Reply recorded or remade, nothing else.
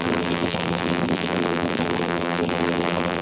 remade